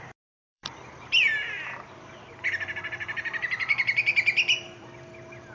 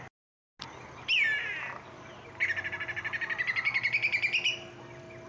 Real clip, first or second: second